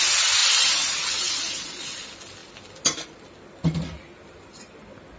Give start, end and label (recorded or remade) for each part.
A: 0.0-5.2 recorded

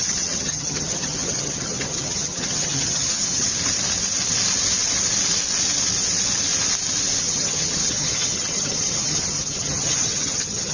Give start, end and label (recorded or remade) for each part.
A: 0.0-3.5 remade; 3.5-7.2 recorded; 7.2-10.7 remade

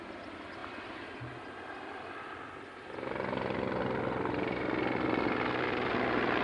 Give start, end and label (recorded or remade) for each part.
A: 0.0-6.4 recorded